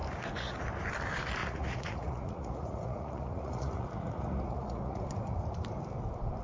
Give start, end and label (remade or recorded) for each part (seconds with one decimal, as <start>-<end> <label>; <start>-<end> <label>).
0.0-1.4 recorded; 1.4-5.1 remade; 5.1-6.4 recorded